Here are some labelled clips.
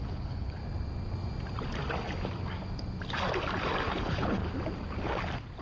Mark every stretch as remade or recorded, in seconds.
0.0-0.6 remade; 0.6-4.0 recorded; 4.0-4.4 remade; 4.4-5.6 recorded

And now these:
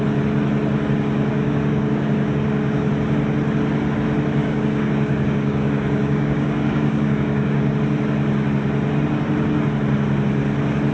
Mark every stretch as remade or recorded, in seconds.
0.0-1.3 recorded; 1.3-2.9 remade; 2.9-4.4 recorded; 4.4-7.7 remade; 7.7-10.9 recorded

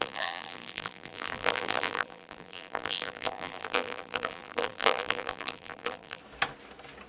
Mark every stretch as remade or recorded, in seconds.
0.0-6.2 remade; 6.2-7.1 recorded

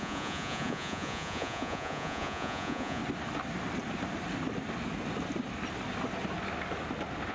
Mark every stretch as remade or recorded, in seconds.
0.0-3.0 remade; 3.0-7.3 recorded

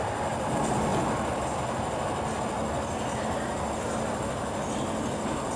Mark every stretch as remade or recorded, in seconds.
0.0-5.6 recorded

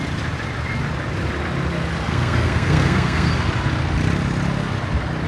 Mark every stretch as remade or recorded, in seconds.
0.0-2.1 recorded; 2.1-3.3 remade; 3.3-5.3 recorded

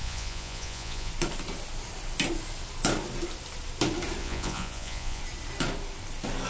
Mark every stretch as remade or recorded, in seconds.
0.0-1.1 remade; 1.1-4.2 recorded; 4.2-5.2 remade; 5.2-6.5 recorded

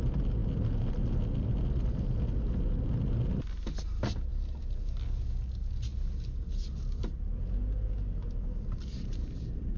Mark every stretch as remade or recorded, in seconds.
0.0-9.8 recorded